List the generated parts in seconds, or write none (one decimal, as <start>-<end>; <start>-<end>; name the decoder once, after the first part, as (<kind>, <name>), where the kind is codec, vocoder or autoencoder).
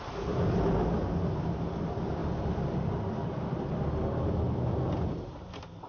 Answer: none